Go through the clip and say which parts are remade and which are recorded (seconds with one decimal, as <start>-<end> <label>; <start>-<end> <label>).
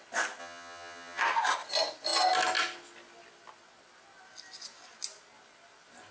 0.0-0.4 recorded; 0.4-1.2 remade; 1.2-6.1 recorded